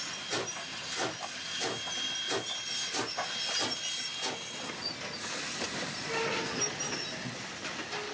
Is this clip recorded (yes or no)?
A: yes